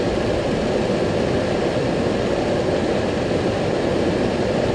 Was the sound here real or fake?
real